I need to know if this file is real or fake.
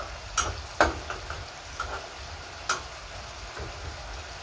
real